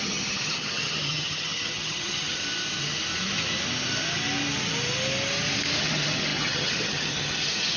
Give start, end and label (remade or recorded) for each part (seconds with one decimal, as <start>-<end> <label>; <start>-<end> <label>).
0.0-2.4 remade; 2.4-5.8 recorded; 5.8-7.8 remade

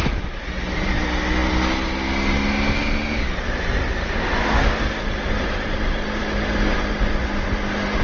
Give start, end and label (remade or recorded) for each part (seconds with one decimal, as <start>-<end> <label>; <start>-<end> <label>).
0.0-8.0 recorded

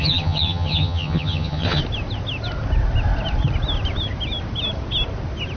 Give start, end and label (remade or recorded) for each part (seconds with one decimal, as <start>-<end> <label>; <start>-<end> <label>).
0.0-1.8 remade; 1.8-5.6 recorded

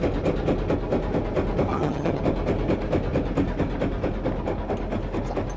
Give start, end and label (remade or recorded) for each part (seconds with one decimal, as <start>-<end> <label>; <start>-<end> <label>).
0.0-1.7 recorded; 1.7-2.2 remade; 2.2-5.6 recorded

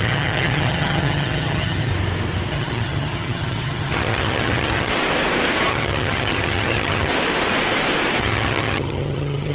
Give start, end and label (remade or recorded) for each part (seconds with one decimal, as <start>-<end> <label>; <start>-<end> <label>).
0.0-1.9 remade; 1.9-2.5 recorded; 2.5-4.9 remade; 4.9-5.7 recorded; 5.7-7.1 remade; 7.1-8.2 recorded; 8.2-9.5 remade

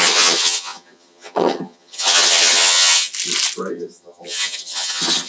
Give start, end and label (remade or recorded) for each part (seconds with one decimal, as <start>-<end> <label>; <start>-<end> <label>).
0.0-3.1 remade; 3.1-3.7 recorded; 3.7-5.3 remade